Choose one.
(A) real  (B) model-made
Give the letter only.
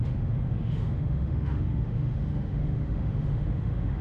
B